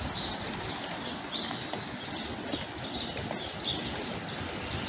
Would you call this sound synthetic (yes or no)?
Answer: no